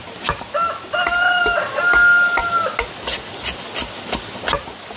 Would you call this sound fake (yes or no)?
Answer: no